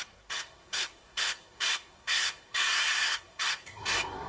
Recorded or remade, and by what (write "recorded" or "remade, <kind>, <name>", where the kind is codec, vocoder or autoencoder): remade, codec, SNAC